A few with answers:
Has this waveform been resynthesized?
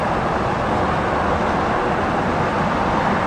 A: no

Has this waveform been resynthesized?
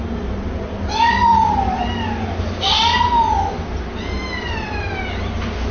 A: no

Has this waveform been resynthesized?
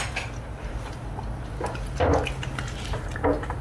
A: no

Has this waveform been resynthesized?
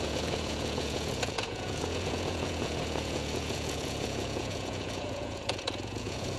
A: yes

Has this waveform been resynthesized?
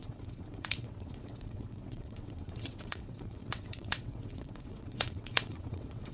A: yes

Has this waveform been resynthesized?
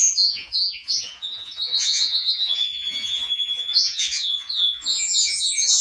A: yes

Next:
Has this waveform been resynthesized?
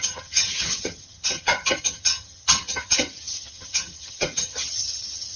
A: yes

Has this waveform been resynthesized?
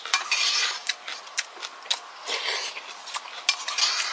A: no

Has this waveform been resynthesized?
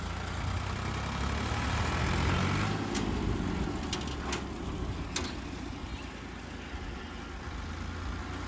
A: no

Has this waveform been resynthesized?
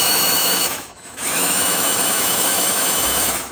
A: yes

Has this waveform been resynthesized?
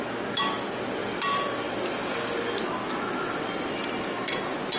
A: no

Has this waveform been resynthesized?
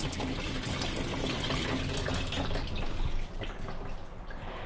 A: no